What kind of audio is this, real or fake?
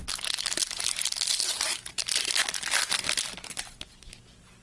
real